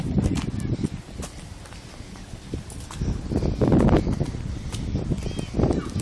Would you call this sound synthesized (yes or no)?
no